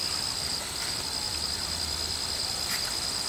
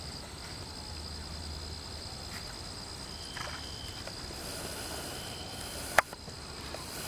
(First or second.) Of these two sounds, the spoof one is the first